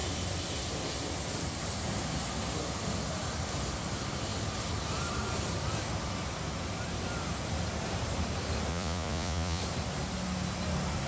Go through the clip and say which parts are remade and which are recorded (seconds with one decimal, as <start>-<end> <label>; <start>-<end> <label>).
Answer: 0.0-8.7 recorded; 8.7-9.6 remade; 9.6-11.1 recorded